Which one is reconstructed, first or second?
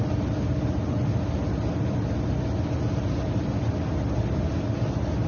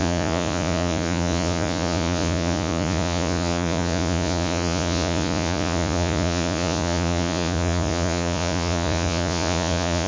second